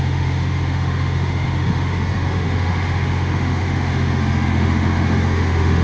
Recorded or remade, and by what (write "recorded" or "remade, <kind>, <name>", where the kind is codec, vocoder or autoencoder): remade, autoencoder, DAC-VAE